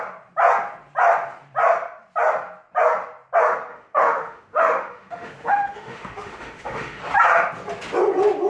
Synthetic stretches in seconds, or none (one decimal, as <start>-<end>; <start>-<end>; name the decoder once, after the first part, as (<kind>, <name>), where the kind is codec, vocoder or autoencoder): 3.7-7.0 (autoencoder, DAC-VAE)